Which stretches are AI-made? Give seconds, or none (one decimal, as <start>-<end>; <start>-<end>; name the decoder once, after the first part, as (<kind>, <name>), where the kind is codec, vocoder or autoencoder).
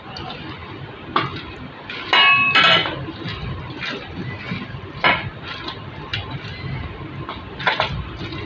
none